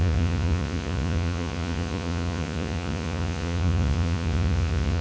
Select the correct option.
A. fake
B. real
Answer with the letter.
A